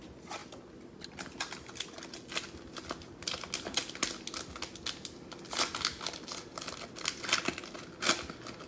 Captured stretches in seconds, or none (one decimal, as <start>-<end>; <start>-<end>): 0.0-8.7